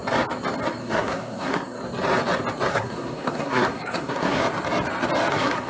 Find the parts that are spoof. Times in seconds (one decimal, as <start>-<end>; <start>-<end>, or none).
0.8-1.8; 2.7-4.4; 5.3-5.7